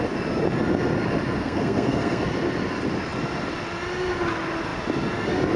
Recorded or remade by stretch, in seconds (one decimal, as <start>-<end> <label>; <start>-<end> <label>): 0.0-1.4 recorded; 1.4-2.2 remade; 2.2-5.6 recorded